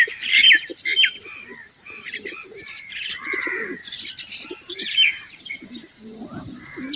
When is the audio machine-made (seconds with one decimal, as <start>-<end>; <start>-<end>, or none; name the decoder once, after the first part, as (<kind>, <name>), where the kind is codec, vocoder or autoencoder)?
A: 0.0-0.7 (vocoder, BigVGAN v2); 2.0-3.8; 4.3-7.0